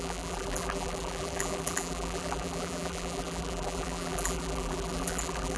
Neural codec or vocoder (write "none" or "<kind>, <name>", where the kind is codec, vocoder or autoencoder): vocoder, BigVGAN v2